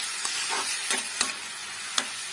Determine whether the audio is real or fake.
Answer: fake